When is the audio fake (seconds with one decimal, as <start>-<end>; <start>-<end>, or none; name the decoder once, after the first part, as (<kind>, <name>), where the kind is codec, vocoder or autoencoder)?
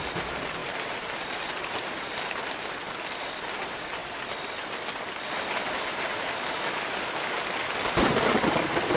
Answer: 0.0-4.0 (vocoder, BigVGAN v2); 4.6-9.0